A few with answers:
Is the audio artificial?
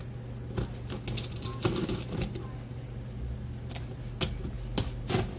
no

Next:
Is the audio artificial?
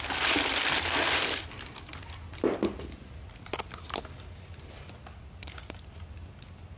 no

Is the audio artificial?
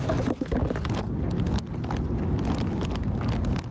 no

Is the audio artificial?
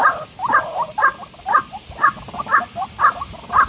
no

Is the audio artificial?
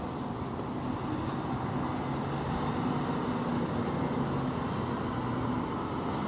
no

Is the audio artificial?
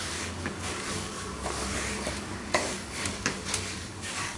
yes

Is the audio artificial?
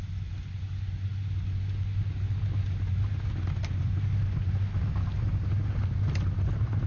no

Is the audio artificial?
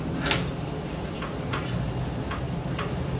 no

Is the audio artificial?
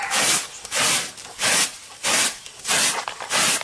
no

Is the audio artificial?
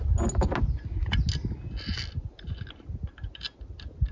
no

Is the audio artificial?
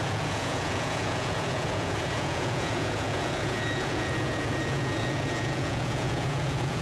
yes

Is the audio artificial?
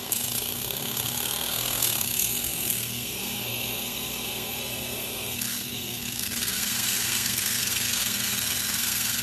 yes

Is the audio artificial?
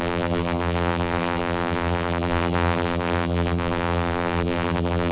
yes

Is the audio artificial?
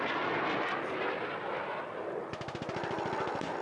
no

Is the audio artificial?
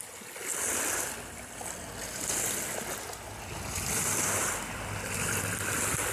no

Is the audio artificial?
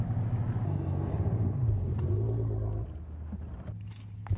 no